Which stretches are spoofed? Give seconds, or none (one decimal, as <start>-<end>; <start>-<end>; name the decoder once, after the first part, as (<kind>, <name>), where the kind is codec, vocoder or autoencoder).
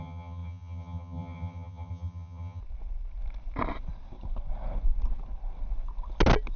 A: 0.0-2.6 (vocoder, HiFi-GAN)